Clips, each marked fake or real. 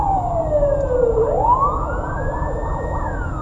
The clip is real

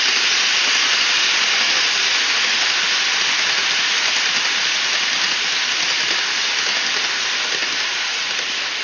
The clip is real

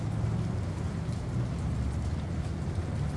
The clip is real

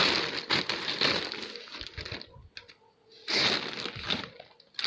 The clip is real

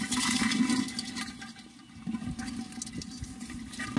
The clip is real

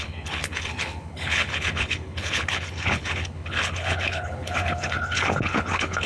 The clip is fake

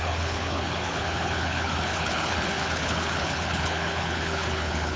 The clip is fake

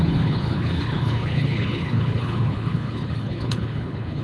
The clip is fake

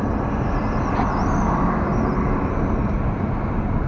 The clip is real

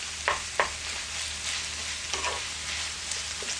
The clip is real